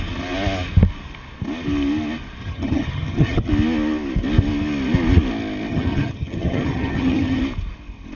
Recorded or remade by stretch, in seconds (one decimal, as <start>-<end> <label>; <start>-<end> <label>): 0.0-2.4 recorded; 2.4-3.5 remade; 3.5-5.7 recorded; 5.7-7.4 remade; 7.4-8.2 recorded